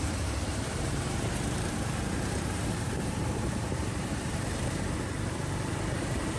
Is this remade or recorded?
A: remade